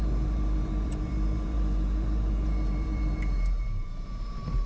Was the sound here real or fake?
fake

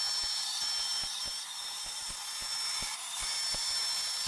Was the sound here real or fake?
real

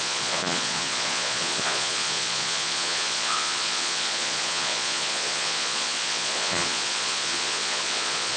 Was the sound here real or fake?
fake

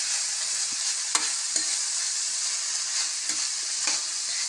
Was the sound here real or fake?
real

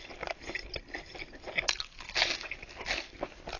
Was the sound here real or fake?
fake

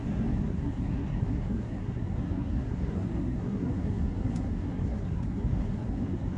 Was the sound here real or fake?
fake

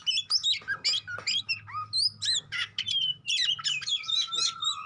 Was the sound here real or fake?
real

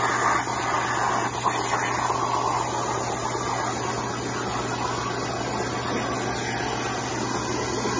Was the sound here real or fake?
real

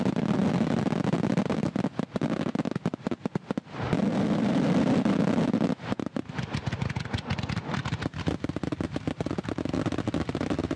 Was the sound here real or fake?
real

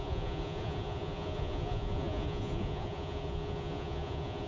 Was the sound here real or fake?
fake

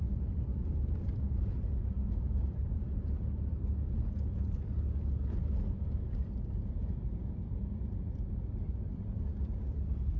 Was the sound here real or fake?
fake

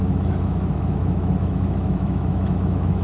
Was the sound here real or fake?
fake